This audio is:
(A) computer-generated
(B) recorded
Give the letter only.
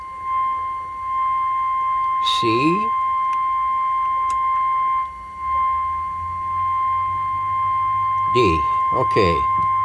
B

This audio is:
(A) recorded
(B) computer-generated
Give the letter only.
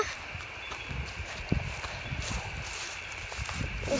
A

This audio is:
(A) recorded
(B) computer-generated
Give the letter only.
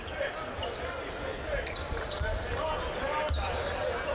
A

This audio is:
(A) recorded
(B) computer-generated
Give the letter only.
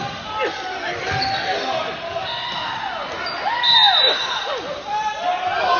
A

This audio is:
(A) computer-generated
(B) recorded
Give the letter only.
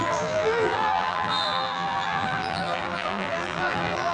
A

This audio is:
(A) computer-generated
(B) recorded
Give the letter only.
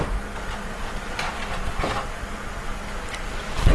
B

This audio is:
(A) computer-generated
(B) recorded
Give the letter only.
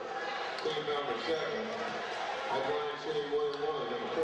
B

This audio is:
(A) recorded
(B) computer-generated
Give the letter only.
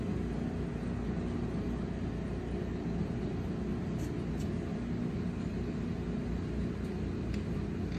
A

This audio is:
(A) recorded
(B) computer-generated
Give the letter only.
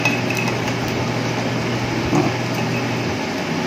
A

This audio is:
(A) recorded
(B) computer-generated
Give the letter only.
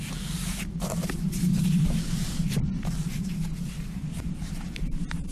B